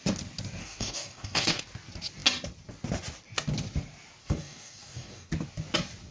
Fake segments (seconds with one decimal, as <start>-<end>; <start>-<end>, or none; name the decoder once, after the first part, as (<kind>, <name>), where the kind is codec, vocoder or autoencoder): 0.6-1.6 (codec, DAC); 4.2-5.3